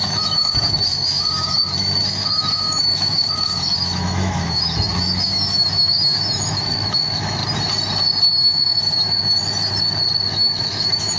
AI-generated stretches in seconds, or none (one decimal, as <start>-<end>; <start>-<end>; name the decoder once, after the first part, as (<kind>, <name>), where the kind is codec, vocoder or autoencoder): 0.0-7.4 (autoencoder, DAC-VAE); 8.4-9.2; 10.3-11.2